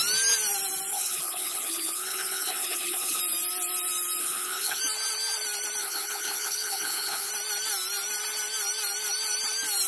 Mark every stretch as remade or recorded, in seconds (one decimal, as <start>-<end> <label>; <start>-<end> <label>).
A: 0.0-0.9 recorded; 0.9-3.2 remade; 3.2-4.2 recorded; 4.2-4.8 remade; 4.8-5.8 recorded; 5.8-7.3 remade; 7.3-9.9 recorded